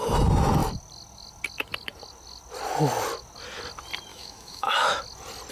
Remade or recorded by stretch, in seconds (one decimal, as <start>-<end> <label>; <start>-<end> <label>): 0.0-4.1 recorded; 4.1-5.0 remade; 5.0-5.5 recorded